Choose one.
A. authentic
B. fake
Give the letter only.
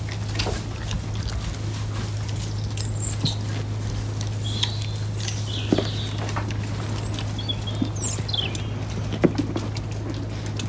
A